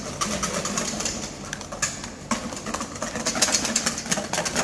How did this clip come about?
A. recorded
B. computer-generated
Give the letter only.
A